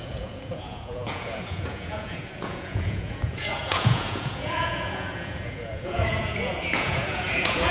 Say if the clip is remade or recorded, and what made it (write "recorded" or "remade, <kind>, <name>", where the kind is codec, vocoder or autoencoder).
remade, vocoder, Vocos